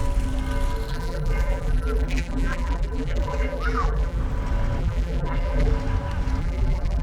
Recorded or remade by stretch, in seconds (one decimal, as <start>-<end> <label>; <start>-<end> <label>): 0.0-0.9 recorded; 0.9-4.2 remade; 4.2-4.8 recorded; 4.8-5.7 remade; 5.7-6.4 recorded; 6.4-7.0 remade